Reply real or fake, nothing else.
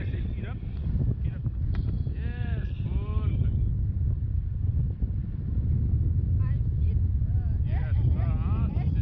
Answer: real